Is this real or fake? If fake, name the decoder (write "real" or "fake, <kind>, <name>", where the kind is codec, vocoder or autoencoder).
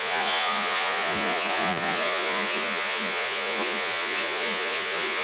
fake, vocoder, Vocos